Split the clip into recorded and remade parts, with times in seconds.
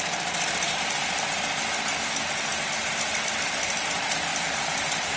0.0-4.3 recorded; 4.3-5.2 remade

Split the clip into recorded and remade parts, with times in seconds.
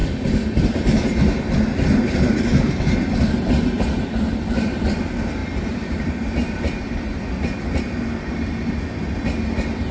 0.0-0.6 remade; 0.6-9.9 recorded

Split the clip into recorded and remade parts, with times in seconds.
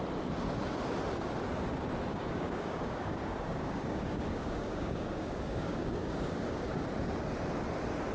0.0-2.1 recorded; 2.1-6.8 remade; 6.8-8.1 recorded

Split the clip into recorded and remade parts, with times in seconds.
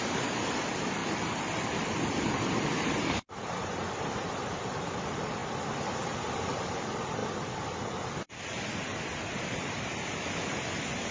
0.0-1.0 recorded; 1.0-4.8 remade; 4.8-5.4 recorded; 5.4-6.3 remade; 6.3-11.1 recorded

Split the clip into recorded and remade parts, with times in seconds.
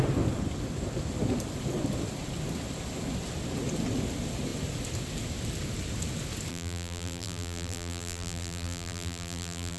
0.0-6.5 recorded; 6.5-9.8 remade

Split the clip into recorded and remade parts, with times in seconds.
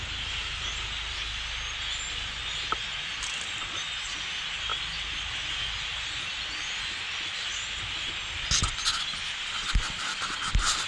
0.0-10.9 recorded